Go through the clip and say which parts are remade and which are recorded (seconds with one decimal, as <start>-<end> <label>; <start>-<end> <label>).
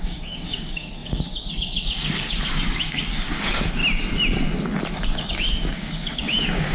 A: 0.0-3.8 remade; 3.8-4.9 recorded; 4.9-6.7 remade